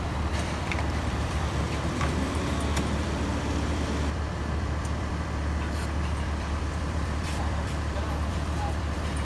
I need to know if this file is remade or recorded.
remade